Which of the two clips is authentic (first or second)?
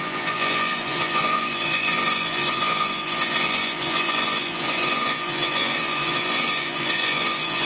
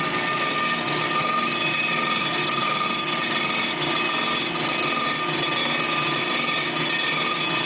second